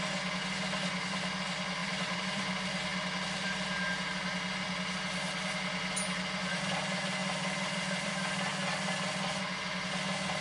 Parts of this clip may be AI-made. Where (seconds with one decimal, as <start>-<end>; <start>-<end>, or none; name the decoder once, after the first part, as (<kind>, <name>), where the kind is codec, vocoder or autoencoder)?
1.8-2.4 (vocoder, BigVGAN v2); 7.2-8.1